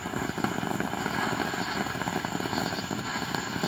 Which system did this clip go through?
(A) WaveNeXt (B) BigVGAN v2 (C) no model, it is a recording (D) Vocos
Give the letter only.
C